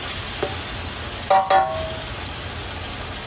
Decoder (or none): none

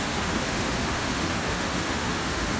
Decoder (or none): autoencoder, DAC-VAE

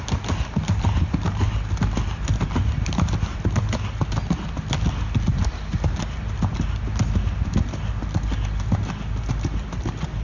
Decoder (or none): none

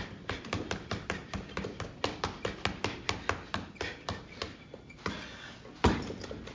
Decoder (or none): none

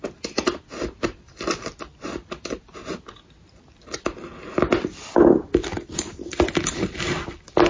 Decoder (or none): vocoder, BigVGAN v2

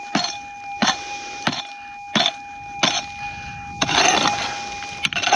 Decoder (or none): none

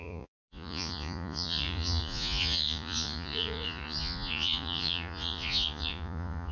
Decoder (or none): vocoder, Vocos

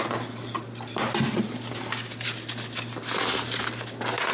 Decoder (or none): none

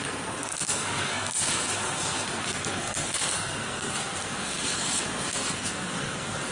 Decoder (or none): codec, SNAC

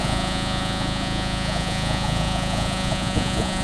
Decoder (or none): vocoder, Vocos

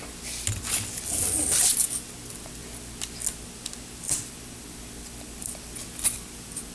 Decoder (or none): none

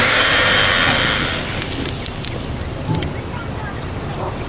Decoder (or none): none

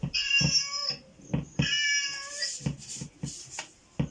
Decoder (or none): none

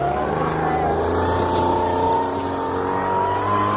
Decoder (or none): none